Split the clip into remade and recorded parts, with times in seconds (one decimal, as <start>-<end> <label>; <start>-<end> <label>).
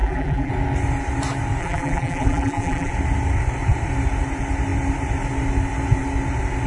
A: 0.0-0.5 remade; 0.5-1.6 recorded; 1.6-2.9 remade; 2.9-6.7 recorded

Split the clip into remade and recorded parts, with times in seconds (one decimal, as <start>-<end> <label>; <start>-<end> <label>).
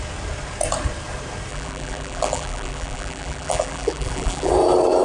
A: 0.0-1.5 recorded; 1.5-4.5 remade; 4.5-5.0 recorded